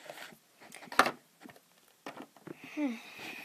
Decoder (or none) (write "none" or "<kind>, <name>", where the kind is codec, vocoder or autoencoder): none